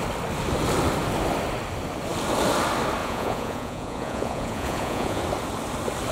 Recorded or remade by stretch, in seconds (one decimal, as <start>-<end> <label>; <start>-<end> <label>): 0.0-3.0 recorded; 3.0-5.2 remade; 5.2-6.1 recorded